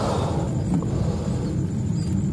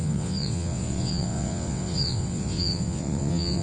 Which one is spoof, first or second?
second